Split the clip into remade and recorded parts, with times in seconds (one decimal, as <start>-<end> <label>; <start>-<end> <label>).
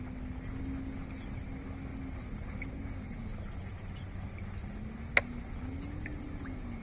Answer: 0.0-6.8 recorded